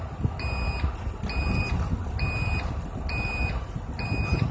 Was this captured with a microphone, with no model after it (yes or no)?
yes